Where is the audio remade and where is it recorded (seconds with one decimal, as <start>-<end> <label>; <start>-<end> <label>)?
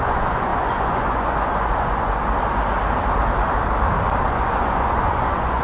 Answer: 0.0-2.2 remade; 2.2-4.3 recorded; 4.3-5.6 remade